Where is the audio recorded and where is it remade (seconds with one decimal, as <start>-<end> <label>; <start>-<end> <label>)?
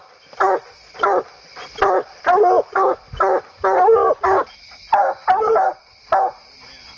0.0-7.0 recorded